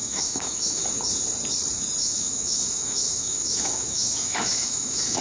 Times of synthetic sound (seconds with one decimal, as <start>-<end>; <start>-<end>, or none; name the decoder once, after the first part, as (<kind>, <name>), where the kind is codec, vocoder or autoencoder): 0.0-0.8 (autoencoder, DAC-VAE); 2.0-5.2

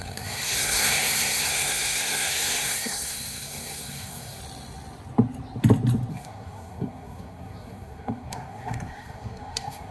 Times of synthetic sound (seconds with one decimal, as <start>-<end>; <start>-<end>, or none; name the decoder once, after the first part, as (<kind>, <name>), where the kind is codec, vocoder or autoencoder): 0.0-4.4 (codec, SNAC); 6.1-9.9

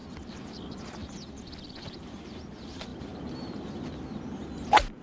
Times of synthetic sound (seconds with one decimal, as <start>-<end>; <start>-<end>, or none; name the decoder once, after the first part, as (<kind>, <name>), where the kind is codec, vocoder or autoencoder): none

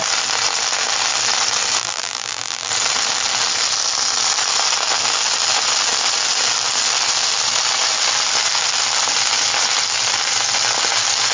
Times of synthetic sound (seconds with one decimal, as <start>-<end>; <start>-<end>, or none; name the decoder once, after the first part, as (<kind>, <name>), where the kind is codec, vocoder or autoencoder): 1.8-2.7 (vocoder, BigVGAN v2)